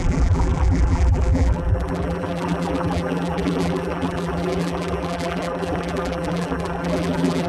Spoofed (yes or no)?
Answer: yes